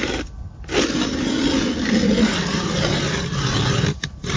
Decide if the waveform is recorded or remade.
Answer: recorded